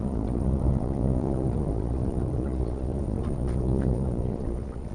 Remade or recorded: remade